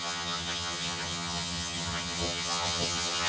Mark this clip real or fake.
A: fake